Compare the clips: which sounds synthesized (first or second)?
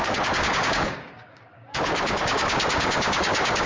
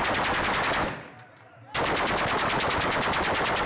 first